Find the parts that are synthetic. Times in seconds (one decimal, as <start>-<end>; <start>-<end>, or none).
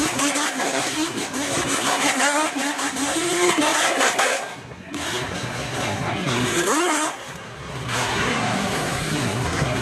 0.0-9.8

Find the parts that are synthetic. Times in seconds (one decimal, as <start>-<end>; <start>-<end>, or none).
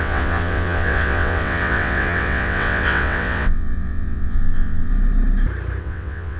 0.0-4.9; 5.8-6.4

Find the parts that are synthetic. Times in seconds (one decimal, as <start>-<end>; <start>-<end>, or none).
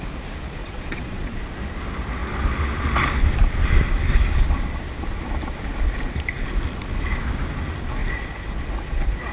0.6-1.4; 8.0-9.3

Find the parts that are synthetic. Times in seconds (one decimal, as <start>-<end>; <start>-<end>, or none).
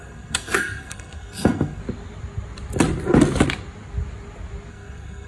0.0-1.8; 4.7-5.3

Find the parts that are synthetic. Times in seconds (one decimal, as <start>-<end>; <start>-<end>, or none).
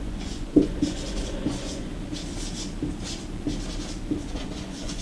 0.0-1.9; 4.3-5.0